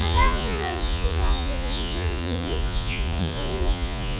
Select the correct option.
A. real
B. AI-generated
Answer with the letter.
B